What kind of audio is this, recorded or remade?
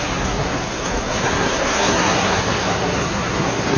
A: remade